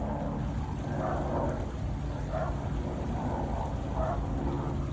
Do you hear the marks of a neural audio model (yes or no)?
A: no